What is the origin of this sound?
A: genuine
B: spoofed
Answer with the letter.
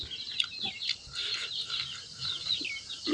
A